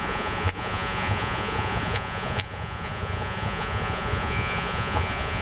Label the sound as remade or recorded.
remade